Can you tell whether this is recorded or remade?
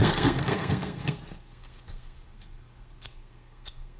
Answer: remade